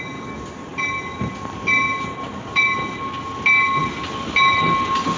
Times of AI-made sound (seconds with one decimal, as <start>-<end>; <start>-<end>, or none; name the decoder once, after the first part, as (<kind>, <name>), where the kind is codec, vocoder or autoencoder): none